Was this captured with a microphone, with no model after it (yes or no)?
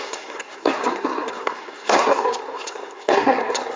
no